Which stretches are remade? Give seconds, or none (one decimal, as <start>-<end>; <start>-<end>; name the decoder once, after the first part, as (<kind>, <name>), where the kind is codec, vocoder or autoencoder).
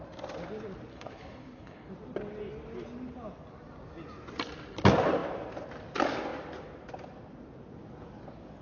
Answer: 0.9-1.9 (codec, HILCodec)